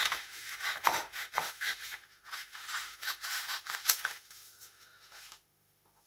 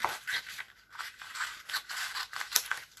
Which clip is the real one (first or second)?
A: second